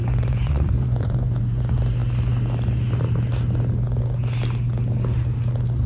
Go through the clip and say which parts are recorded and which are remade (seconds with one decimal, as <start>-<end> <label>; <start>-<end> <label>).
0.0-1.6 remade; 1.6-5.9 recorded